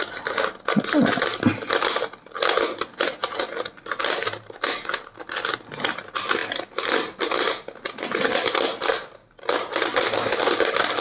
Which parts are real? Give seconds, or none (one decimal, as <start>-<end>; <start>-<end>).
0.0-11.0